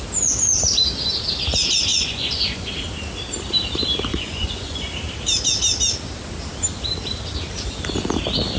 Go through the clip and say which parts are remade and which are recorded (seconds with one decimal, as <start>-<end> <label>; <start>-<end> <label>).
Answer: 0.0-1.9 recorded; 1.9-2.7 remade; 2.7-4.1 recorded; 4.1-4.8 remade; 4.8-8.6 recorded